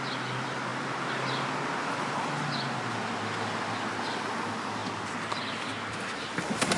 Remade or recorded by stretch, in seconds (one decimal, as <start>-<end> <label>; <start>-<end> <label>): 0.0-6.8 recorded